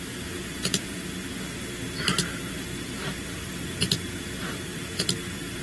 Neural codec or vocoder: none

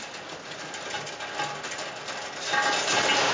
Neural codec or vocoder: none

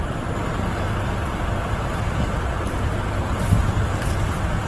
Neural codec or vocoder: none